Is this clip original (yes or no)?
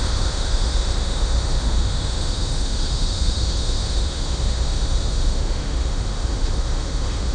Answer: no